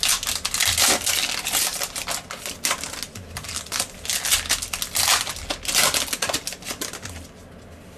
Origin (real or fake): real